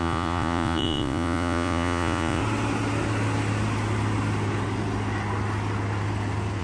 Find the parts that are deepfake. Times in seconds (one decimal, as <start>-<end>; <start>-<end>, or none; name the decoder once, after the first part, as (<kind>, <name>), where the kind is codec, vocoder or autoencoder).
0.0-2.4 (vocoder, Vocos)